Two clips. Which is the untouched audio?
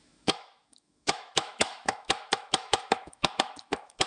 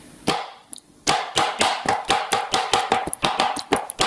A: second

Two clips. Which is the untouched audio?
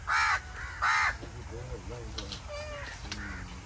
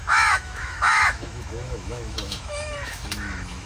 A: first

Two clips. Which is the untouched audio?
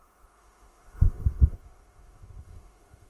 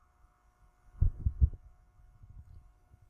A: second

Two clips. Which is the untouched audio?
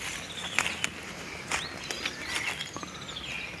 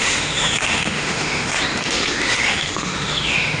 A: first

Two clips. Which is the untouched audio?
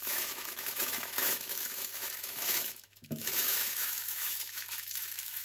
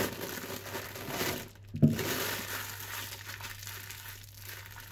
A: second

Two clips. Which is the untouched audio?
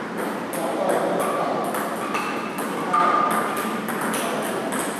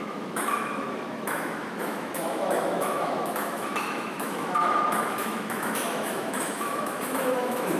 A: first